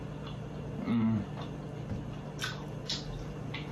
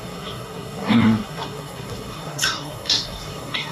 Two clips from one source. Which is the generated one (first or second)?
second